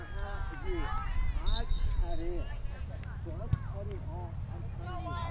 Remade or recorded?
recorded